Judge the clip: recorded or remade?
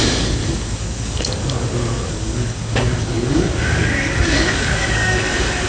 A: remade